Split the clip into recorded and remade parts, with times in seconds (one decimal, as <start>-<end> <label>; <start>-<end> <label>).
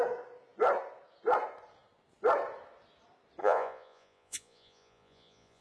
0.0-3.4 recorded; 3.4-5.6 remade